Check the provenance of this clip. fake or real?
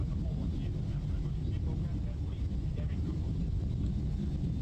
real